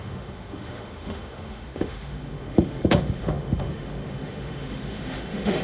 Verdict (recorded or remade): remade